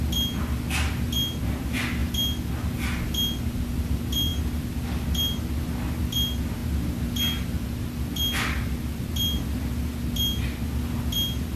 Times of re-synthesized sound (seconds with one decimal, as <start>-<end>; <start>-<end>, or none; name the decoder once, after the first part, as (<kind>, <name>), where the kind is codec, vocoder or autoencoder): none